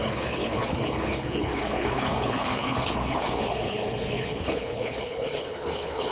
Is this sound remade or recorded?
remade